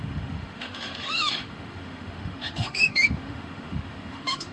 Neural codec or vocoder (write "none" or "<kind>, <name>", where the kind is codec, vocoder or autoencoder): autoencoder, DAC-VAE